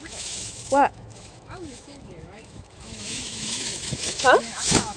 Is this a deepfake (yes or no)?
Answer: yes